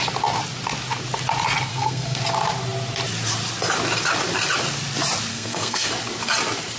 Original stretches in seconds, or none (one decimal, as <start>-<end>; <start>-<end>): 0.0-1.7; 2.2-5.3; 5.9-6.8